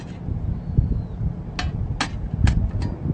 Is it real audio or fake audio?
real